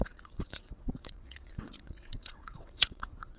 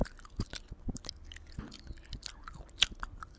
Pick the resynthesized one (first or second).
first